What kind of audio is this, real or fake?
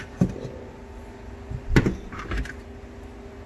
real